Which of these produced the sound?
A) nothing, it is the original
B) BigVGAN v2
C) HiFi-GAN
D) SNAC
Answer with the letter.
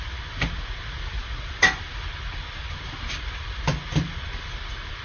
B